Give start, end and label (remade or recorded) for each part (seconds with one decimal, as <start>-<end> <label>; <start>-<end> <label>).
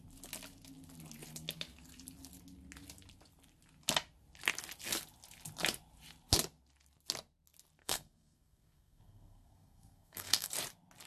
0.0-7.8 recorded; 7.8-10.5 remade; 10.5-11.1 recorded